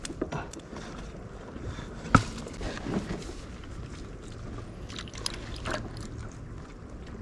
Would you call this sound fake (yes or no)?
no